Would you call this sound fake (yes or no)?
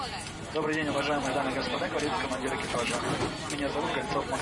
no